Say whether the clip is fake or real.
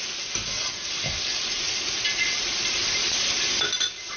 real